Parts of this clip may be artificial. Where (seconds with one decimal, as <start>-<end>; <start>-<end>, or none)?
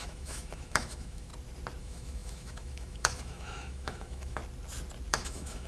0.0-1.3; 1.8-4.4; 5.1-5.7